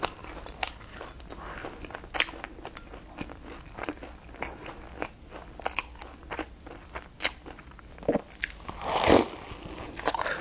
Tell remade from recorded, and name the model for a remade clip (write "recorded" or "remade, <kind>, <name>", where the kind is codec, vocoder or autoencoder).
recorded